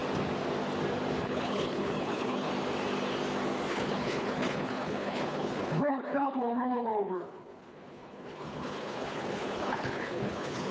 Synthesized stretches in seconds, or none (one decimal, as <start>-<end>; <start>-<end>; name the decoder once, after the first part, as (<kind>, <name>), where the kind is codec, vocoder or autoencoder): 1.2-2.5 (codec, HILCodec); 3.7-10.7